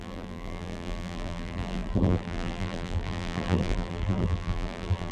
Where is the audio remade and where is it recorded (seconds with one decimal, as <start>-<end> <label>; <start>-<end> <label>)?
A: 0.0-5.1 remade